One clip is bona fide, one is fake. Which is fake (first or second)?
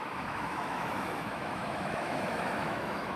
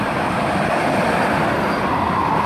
first